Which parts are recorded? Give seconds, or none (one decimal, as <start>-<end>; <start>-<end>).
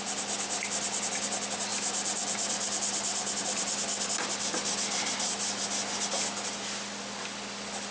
0.0-7.9